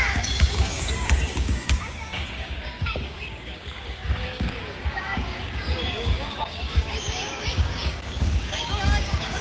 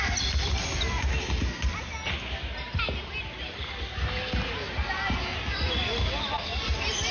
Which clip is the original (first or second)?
second